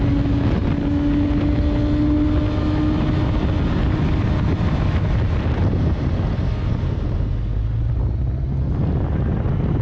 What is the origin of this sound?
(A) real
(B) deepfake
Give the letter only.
A